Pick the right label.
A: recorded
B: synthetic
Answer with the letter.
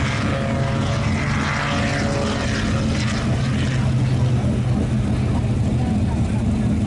A